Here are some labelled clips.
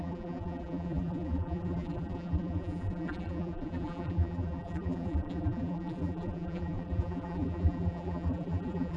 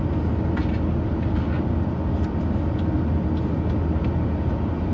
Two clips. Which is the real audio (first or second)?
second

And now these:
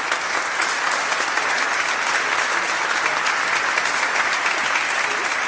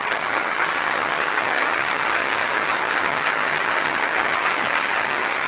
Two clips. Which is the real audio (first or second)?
first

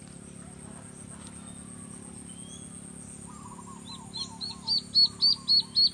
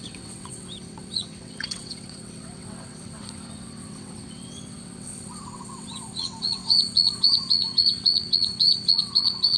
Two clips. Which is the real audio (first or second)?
first